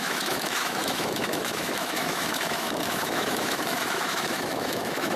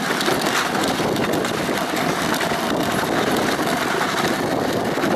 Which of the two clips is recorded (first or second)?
second